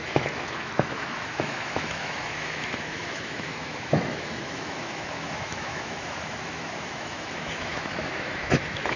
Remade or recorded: remade